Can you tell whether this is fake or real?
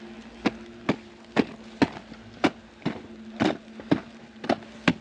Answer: real